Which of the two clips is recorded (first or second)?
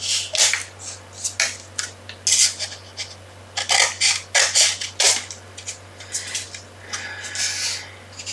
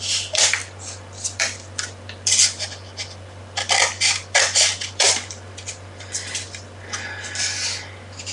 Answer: first